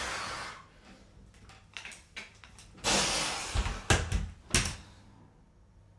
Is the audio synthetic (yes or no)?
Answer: no